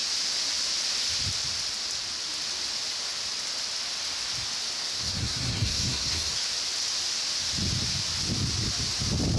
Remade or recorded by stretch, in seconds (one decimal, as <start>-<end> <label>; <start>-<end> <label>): 0.0-4.8 recorded; 4.8-6.4 remade; 6.4-9.4 recorded